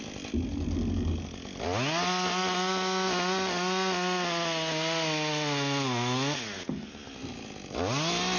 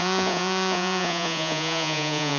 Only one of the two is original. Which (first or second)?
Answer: first